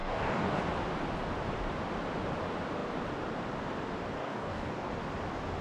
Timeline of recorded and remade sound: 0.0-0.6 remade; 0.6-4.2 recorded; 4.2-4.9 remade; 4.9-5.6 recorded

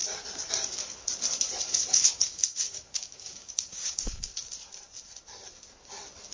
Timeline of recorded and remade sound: 0.0-1.9 recorded; 1.9-4.3 remade; 4.3-6.3 recorded

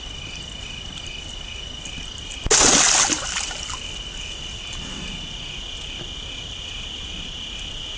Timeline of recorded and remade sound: 0.0-8.0 recorded

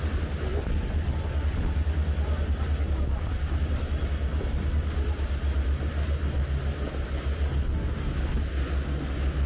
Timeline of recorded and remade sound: 0.0-9.5 recorded